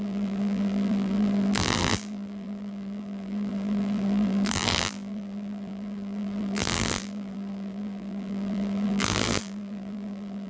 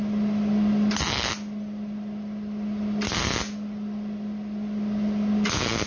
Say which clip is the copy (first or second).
first